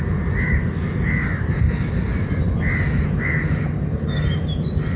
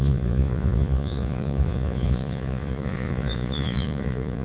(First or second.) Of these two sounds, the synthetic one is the second